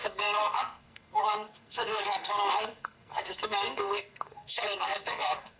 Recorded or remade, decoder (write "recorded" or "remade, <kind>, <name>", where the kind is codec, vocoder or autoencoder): remade, codec, SNAC